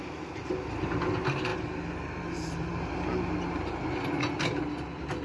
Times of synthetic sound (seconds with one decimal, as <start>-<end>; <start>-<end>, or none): none